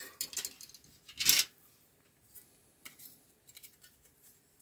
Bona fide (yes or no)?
yes